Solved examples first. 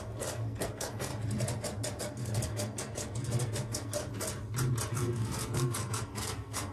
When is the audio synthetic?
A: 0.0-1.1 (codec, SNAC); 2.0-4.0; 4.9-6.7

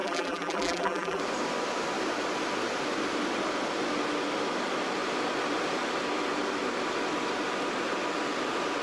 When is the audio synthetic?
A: 0.0-1.2 (vocoder, BigVGAN v2)